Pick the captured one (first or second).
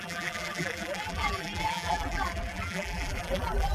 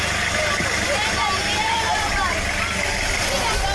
second